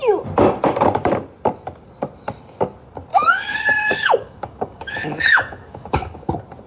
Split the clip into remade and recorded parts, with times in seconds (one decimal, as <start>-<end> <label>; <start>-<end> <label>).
0.0-3.1 recorded; 3.1-6.3 remade; 6.3-6.7 recorded